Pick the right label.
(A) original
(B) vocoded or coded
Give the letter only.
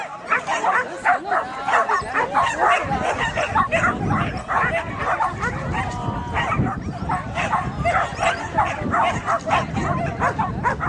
A